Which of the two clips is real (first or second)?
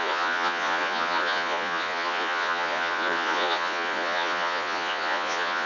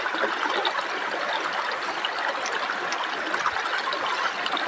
second